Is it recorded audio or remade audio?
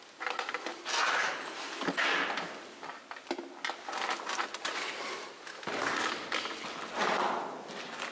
recorded